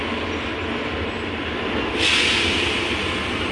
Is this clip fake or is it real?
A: real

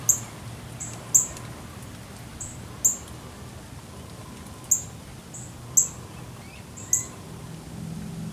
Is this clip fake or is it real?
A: real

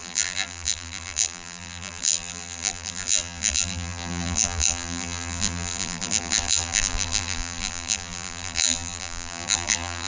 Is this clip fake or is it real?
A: fake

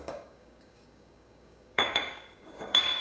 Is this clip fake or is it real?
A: fake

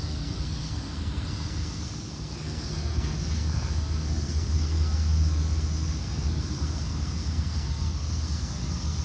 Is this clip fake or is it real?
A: fake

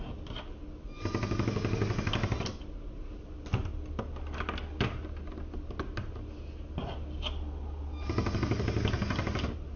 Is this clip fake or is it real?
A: real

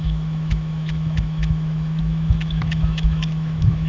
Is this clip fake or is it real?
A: fake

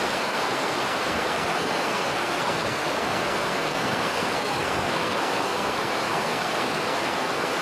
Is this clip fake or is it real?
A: fake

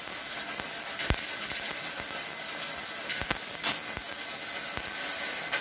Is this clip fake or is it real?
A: real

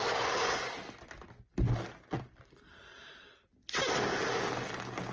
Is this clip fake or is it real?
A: real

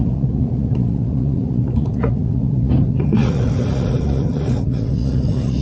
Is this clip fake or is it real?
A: fake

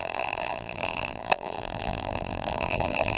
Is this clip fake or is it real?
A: fake